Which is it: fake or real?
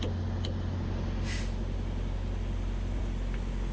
real